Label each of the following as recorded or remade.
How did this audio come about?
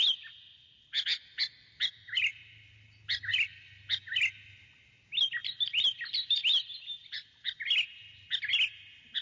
recorded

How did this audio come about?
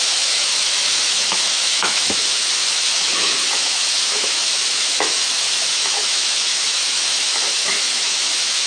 remade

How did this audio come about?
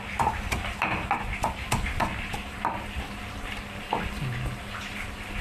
recorded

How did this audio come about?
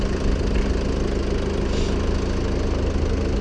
recorded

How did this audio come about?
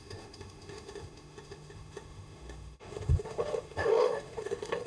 remade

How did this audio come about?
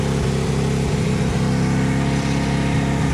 recorded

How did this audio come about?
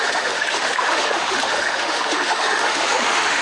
remade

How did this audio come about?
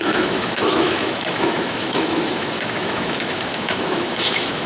remade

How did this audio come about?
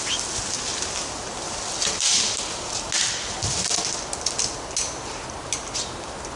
recorded